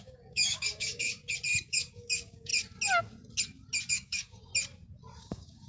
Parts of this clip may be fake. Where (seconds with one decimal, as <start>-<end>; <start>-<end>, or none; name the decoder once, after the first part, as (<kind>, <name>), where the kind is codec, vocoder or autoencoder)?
0.0-1.2 (codec, DAC); 1.7-2.5; 3.9-4.5; 5.2-5.7